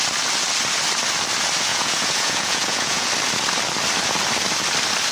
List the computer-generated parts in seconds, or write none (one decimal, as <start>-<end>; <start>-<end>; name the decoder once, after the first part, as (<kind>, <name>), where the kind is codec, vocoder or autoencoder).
1.7-3.1 (vocoder, Vocos)